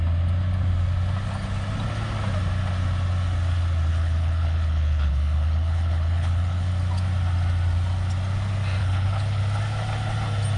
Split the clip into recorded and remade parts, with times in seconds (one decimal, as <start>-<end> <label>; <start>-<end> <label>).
0.0-3.9 recorded; 3.9-6.7 remade; 6.7-8.8 recorded; 8.8-9.4 remade; 9.4-10.6 recorded